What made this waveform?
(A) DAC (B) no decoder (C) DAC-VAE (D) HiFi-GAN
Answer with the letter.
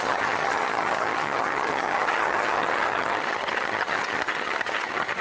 D